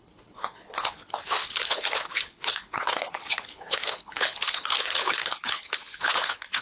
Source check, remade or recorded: remade